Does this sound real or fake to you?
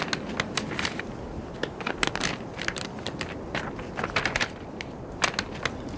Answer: real